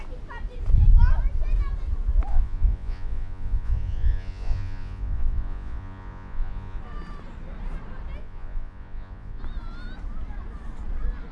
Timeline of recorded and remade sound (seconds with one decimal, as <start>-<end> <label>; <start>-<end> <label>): 0.0-2.3 recorded; 2.3-6.8 remade; 6.8-8.2 recorded; 8.2-9.4 remade; 9.4-11.3 recorded